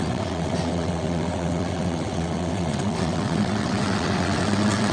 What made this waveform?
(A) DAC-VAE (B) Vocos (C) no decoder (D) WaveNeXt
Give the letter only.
D